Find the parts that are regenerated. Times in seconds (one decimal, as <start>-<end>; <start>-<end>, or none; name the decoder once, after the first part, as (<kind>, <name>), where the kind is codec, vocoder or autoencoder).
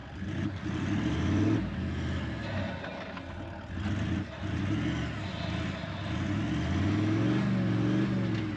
none